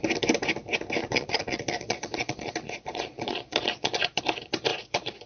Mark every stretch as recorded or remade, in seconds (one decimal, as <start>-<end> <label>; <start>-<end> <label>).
0.0-1.0 recorded; 1.0-4.2 remade; 4.2-4.7 recorded; 4.7-5.3 remade